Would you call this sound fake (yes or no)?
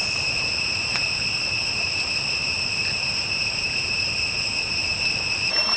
yes